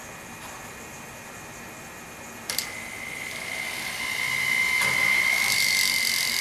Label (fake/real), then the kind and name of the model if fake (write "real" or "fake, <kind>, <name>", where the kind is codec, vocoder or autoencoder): real